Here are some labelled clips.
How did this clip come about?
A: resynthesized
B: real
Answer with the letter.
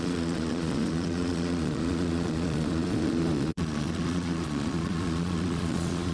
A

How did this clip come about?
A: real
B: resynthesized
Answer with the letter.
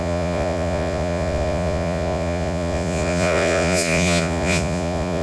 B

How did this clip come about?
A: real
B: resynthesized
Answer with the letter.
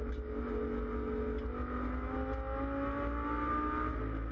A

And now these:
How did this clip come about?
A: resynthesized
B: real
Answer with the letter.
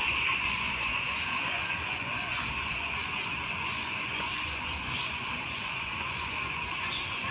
A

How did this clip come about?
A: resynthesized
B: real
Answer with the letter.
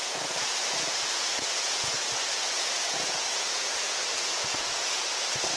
A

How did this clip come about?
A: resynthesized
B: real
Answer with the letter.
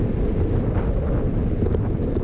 B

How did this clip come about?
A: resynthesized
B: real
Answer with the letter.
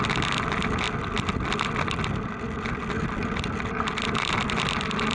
B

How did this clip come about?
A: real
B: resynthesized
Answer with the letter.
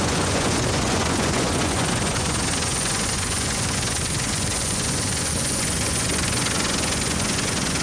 B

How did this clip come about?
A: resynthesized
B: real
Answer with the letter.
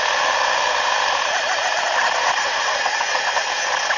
B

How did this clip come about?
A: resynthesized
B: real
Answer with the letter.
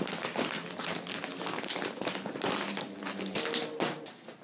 B